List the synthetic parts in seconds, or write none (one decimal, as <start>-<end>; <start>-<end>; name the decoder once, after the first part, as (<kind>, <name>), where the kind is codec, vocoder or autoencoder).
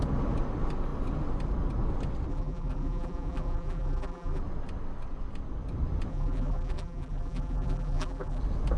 2.3-4.4 (vocoder, BigVGAN v2); 6.1-8.4